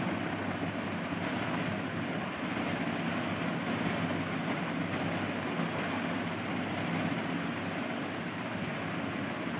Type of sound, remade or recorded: recorded